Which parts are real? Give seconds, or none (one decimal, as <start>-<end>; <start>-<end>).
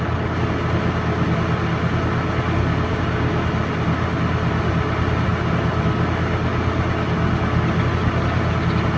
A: 0.0-2.9; 3.4-9.0